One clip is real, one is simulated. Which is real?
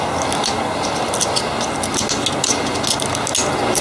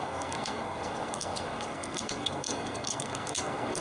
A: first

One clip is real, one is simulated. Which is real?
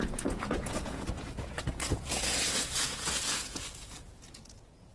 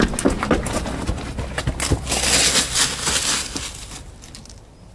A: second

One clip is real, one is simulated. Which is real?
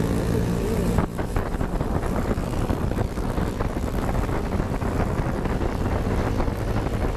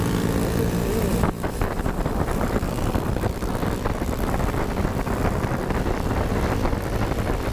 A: first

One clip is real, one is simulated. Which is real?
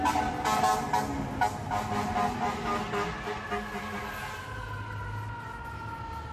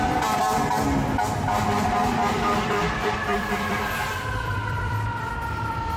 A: first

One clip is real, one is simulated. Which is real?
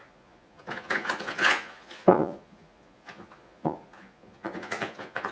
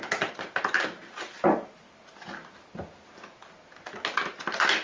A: second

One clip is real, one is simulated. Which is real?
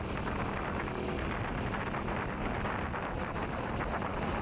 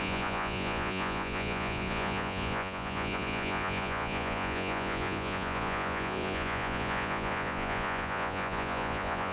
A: first